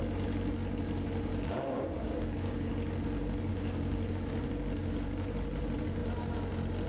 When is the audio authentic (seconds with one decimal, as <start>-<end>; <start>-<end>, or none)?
0.0-1.3; 2.7-3.5; 4.5-6.9